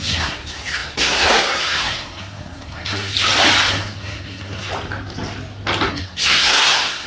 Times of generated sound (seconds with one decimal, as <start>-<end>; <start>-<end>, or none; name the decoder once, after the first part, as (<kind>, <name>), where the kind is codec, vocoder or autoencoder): 0.0-3.1 (codec, SNAC); 3.7-4.7; 5.9-7.1